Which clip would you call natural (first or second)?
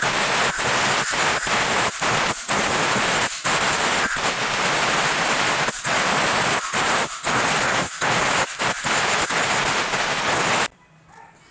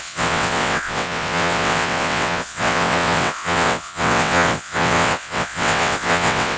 first